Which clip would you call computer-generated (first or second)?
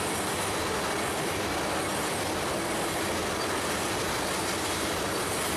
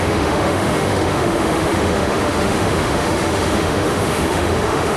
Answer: second